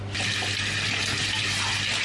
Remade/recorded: recorded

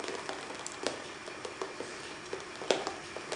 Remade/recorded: recorded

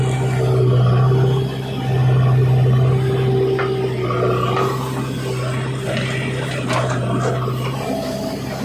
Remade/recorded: recorded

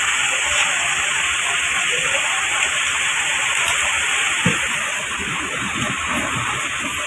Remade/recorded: recorded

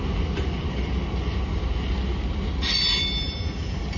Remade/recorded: recorded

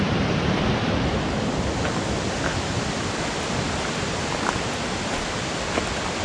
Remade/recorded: recorded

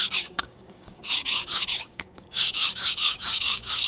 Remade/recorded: remade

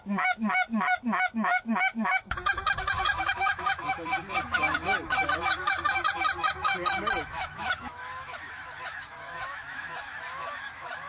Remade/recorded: remade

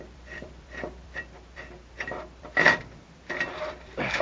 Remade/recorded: remade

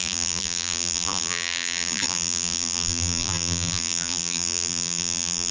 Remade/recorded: remade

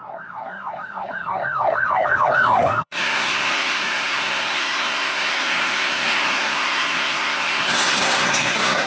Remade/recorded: remade